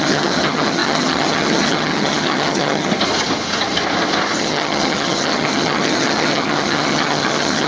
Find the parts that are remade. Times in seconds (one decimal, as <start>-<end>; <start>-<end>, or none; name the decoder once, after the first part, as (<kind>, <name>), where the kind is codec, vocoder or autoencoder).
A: 0.0-2.9 (vocoder, HiFi-GAN); 4.4-7.7